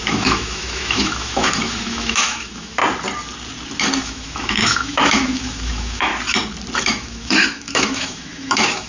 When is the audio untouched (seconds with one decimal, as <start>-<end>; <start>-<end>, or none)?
2.8-4.0; 6.1-6.8